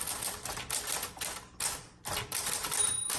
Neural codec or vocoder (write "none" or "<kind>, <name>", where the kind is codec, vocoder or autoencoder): none